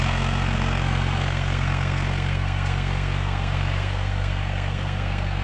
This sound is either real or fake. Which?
fake